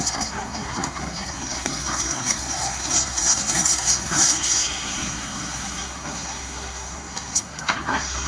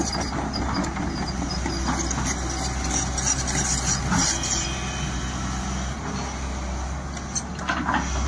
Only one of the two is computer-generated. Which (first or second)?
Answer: first